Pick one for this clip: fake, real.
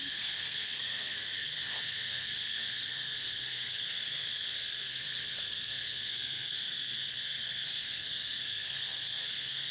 fake